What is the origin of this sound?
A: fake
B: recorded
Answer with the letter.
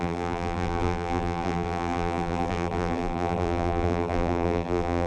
A